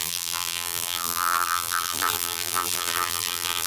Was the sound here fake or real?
fake